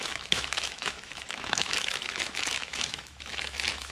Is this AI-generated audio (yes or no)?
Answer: yes